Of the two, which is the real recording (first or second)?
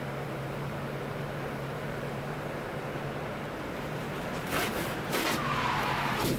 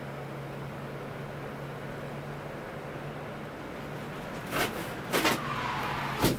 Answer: second